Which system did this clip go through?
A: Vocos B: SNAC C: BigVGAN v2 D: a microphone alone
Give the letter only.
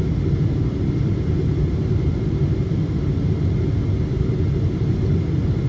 D